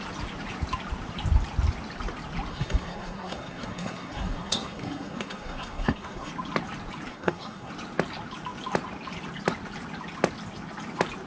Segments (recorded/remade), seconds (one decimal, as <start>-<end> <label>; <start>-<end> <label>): 0.0-2.5 recorded; 2.5-6.3 remade; 6.3-7.1 recorded; 7.1-7.7 remade; 7.7-11.3 recorded